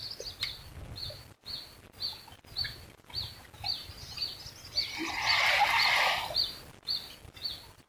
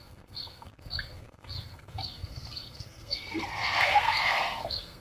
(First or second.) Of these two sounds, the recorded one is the first